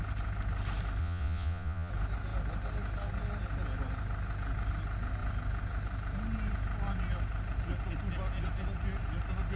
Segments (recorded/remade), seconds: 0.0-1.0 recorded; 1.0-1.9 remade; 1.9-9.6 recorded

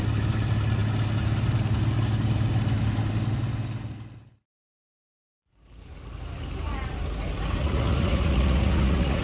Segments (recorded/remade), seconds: 0.0-7.6 recorded; 7.6-9.2 remade

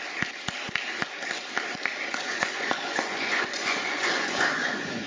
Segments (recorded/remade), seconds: 0.0-2.1 recorded; 2.1-5.1 remade

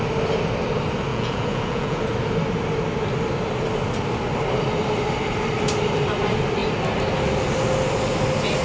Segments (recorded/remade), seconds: 0.0-1.1 recorded; 1.1-2.0 remade; 2.0-8.6 recorded

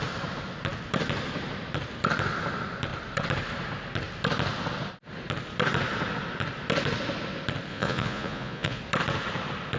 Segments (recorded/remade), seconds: 0.0-7.7 recorded; 7.7-8.8 remade; 8.8-9.8 recorded